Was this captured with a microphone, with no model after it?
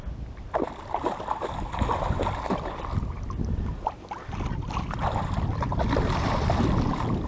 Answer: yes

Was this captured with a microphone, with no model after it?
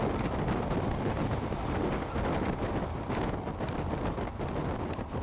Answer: yes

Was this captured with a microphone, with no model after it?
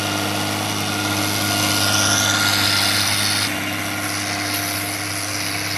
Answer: yes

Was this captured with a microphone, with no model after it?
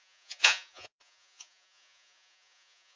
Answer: no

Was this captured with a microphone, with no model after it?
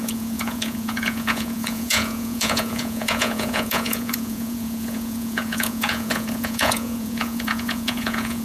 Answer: no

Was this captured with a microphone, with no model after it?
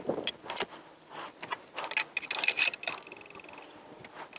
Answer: yes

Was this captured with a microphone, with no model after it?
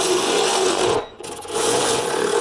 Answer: no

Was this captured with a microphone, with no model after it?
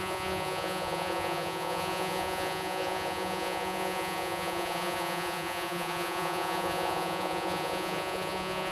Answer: no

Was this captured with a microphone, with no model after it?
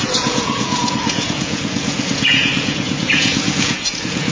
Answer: no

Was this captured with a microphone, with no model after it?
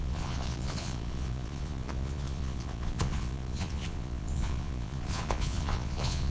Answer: no